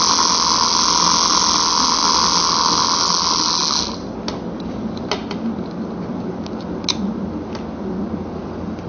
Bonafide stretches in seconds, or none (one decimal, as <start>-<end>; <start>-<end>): 0.0-8.9

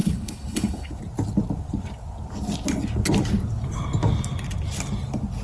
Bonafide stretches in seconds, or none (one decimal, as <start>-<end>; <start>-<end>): 0.9-5.4

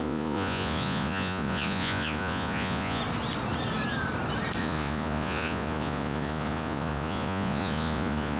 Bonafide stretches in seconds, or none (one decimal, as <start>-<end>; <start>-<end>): 3.0-4.6